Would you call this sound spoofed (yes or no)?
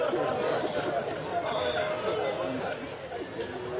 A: no